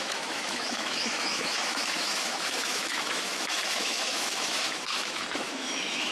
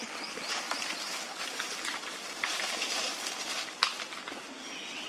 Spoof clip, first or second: first